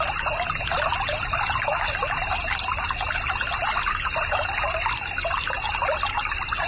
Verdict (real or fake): real